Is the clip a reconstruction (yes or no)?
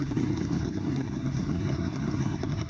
yes